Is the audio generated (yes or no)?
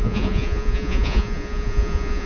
yes